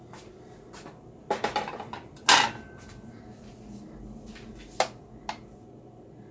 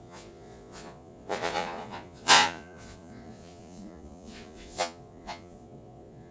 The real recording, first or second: first